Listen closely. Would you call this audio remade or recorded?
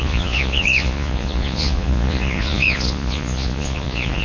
remade